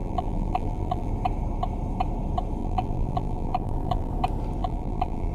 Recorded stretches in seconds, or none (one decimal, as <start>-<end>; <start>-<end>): 1.1-2.6; 4.1-4.6